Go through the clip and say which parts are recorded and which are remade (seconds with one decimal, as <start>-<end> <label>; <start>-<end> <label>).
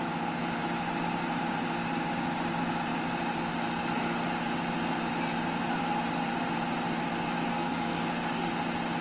0.0-7.5 recorded; 7.5-8.0 remade; 8.0-9.0 recorded